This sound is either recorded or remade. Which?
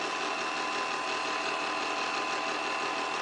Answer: recorded